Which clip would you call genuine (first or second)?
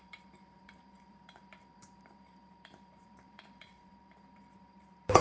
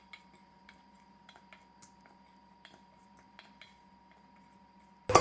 second